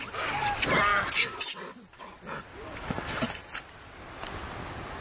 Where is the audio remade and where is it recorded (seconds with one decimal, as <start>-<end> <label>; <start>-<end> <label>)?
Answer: 0.0-5.0 recorded